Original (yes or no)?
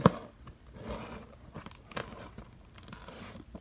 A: yes